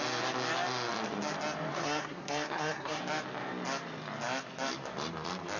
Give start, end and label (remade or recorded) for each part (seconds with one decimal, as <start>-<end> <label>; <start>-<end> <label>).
0.0-1.7 recorded; 1.7-3.0 remade; 3.0-5.6 recorded